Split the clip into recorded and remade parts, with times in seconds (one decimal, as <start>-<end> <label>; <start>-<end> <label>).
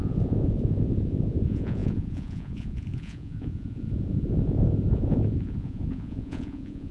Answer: 0.0-6.9 remade